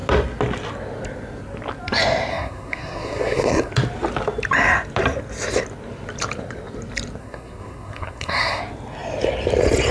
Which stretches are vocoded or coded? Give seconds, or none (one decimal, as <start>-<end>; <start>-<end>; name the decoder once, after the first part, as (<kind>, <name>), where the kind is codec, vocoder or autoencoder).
2.3-3.7 (codec, SNAC); 7.2-8.6